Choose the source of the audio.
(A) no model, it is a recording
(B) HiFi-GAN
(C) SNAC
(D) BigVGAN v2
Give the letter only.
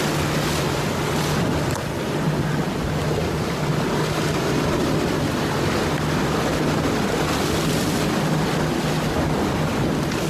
A